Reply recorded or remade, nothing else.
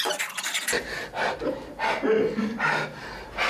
recorded